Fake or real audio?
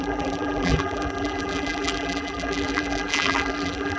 fake